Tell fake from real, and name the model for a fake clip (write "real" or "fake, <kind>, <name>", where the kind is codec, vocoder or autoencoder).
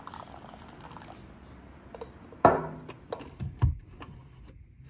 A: real